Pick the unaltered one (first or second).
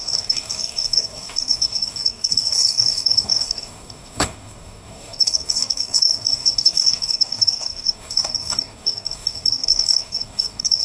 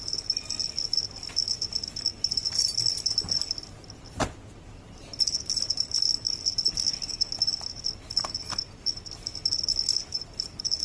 second